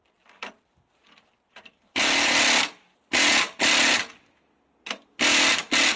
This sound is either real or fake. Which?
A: real